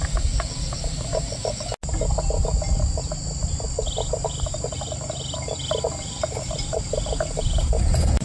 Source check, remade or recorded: recorded